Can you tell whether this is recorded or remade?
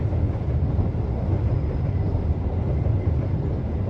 recorded